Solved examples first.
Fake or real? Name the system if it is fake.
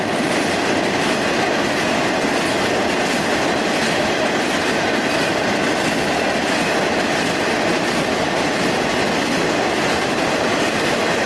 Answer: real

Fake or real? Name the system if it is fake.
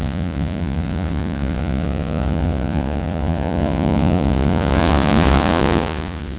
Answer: fake, vocoder, Vocos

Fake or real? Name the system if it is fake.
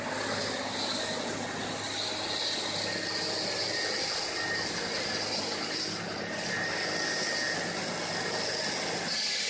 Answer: real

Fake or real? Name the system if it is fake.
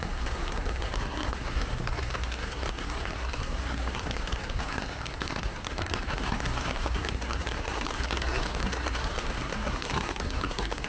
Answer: fake, codec, SNAC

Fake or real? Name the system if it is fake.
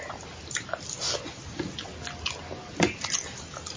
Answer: real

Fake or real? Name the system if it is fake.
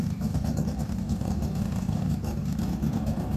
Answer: fake, codec, DAC